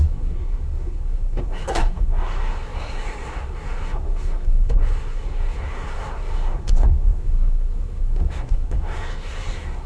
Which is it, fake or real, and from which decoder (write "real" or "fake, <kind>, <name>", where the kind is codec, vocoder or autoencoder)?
fake, codec, SNAC